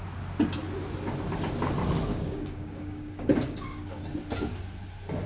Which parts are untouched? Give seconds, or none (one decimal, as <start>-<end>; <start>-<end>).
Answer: 0.0-2.1; 4.0-5.3